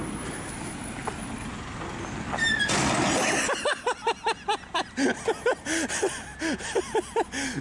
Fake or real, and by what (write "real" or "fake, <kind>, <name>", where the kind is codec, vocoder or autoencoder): real